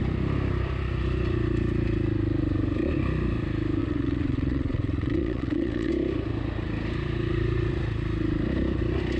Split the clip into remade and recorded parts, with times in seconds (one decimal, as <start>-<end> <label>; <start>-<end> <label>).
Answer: 0.0-3.8 recorded; 3.8-5.9 remade; 5.9-9.2 recorded